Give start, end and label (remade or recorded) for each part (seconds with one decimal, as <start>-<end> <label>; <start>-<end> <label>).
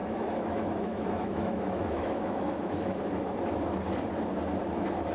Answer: 0.0-3.1 remade; 3.1-5.1 recorded